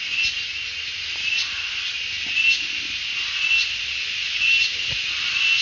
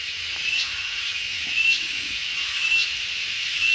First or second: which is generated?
second